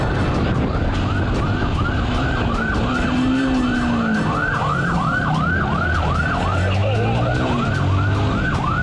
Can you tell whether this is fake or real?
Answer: real